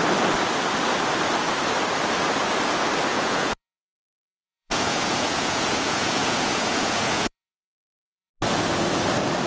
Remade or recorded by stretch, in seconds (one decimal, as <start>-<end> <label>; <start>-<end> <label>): 0.0-3.1 recorded; 3.1-8.3 remade; 8.3-9.5 recorded